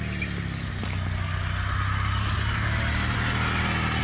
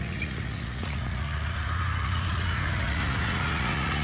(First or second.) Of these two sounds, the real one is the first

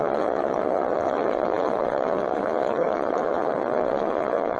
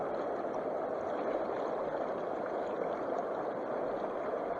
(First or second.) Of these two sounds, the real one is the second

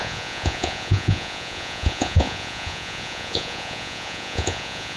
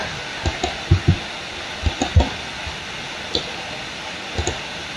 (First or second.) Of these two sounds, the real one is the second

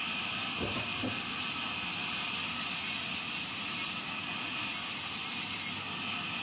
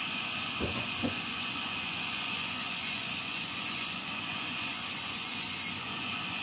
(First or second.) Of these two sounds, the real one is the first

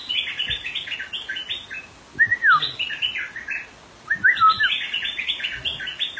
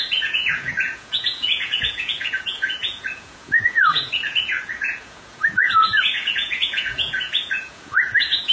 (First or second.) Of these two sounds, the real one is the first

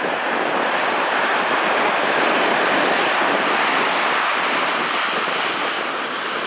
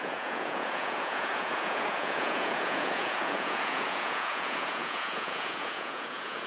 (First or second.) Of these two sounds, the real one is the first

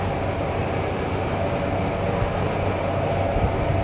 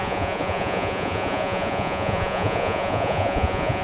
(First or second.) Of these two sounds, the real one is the first